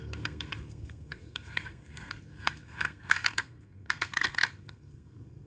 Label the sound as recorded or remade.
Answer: remade